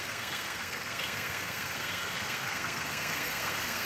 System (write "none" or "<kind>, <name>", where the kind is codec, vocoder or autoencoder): codec, SNAC